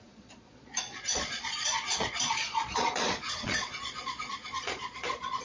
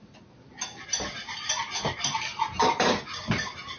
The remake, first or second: first